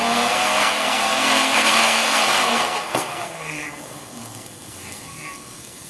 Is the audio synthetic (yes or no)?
yes